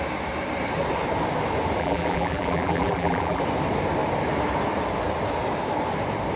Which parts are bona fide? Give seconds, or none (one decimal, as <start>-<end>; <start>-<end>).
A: 0.0-1.8; 3.4-6.4

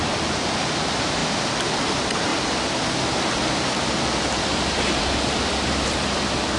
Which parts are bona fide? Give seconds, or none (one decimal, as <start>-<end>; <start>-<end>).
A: 0.0-6.6

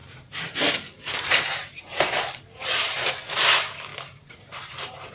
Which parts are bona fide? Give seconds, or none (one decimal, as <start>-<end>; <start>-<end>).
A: 3.1-3.9

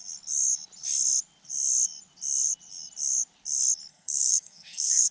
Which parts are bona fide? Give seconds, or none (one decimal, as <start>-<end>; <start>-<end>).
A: 0.0-3.9

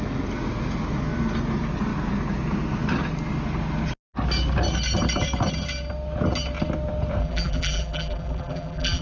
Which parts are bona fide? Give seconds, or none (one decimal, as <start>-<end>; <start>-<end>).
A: 0.0-7.2

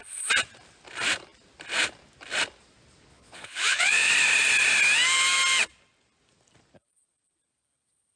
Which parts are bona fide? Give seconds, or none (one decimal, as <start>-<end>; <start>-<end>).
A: 0.0-3.1; 4.1-8.2

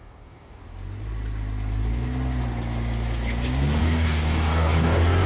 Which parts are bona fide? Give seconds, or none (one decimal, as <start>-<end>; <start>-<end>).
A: 0.6-3.8

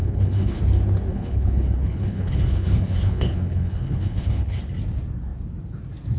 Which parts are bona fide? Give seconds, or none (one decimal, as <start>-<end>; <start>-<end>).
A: 0.6-1.1; 4.6-6.2